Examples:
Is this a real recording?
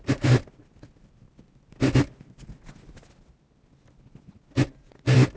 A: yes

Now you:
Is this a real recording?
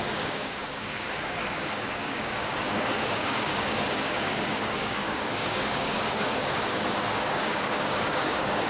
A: no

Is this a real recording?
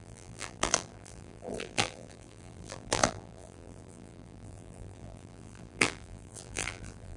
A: no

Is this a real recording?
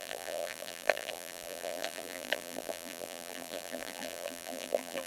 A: no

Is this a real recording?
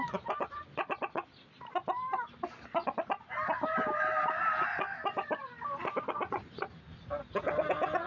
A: yes